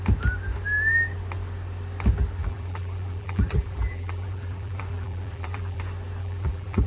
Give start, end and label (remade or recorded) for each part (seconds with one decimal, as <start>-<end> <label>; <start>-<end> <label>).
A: 0.0-2.4 recorded; 2.4-5.8 remade; 5.8-6.2 recorded; 6.2-6.9 remade